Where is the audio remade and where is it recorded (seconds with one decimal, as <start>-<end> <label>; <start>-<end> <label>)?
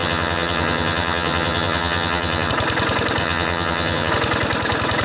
0.0-2.5 remade; 2.5-3.2 recorded; 3.2-4.1 remade; 4.1-5.0 recorded